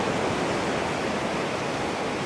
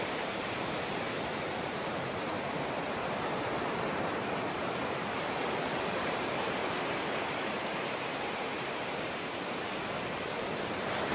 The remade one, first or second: second